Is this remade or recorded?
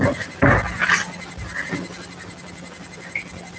recorded